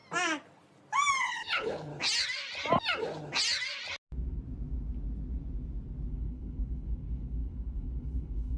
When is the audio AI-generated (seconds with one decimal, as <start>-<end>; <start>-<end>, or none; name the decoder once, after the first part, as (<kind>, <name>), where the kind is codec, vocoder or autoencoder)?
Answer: 1.2-1.9 (codec, HILCodec); 6.1-8.6